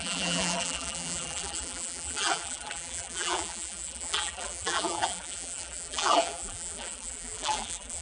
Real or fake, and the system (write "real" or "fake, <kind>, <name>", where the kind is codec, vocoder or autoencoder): fake, vocoder, BigVGAN v2